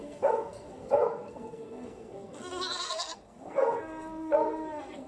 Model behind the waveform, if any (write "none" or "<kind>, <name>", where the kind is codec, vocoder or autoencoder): codec, SNAC